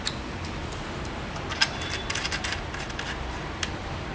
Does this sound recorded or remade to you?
recorded